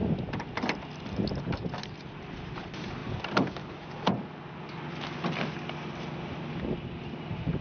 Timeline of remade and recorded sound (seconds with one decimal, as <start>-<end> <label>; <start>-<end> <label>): 0.0-1.4 recorded; 1.4-3.0 remade; 3.0-7.6 recorded